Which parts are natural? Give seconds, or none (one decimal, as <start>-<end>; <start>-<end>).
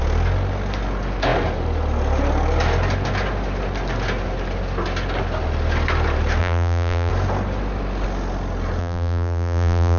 0.0-6.4; 7.1-8.8